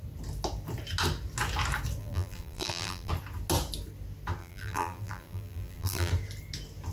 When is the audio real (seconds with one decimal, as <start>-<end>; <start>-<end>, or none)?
0.0-2.0; 3.1-4.4; 6.1-6.9